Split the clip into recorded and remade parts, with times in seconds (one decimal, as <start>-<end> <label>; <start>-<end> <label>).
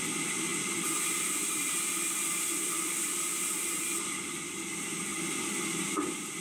0.0-0.5 recorded; 0.5-4.3 remade; 4.3-5.1 recorded; 5.1-6.4 remade